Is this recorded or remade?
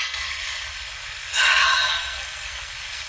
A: remade